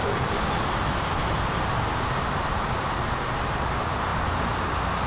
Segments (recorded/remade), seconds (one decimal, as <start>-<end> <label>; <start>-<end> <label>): 0.0-5.1 recorded